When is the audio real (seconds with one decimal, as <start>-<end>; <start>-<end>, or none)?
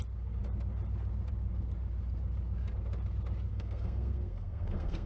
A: 0.0-3.5